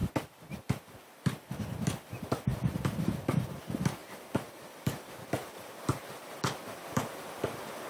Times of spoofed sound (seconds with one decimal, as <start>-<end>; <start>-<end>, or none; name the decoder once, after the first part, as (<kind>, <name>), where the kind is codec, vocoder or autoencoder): 2.5-3.6 (vocoder, BigVGAN v2); 4.0-7.2